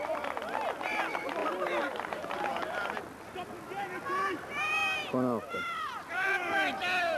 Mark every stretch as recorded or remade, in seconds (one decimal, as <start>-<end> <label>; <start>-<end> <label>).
0.0-1.4 recorded; 1.4-2.4 remade; 2.4-7.2 recorded